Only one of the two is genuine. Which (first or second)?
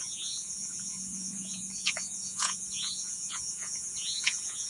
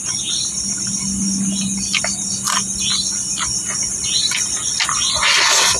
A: second